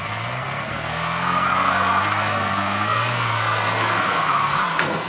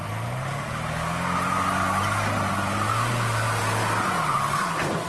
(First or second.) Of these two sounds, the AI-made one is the first